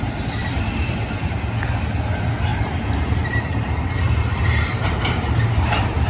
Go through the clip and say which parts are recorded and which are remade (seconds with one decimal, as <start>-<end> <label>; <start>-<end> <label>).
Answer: 0.0-0.4 recorded; 0.4-1.0 remade; 1.0-2.5 recorded; 2.5-6.1 remade